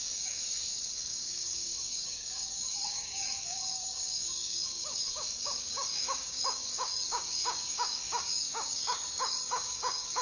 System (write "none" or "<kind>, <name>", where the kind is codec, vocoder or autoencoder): codec, DAC